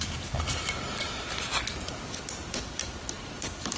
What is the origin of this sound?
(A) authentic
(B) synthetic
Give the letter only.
A